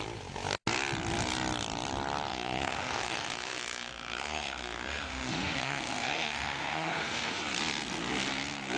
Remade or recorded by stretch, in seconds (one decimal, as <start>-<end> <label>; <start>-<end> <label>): 0.0-2.3 recorded; 2.3-7.4 remade; 7.4-8.8 recorded